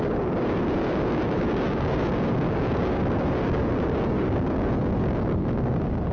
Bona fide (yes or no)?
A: no